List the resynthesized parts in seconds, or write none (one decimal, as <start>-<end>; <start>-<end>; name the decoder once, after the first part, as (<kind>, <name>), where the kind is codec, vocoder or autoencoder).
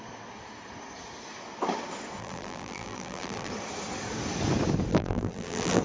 2.2-3.5 (vocoder, BigVGAN v2); 4.9-5.8